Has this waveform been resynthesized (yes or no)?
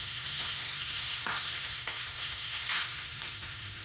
yes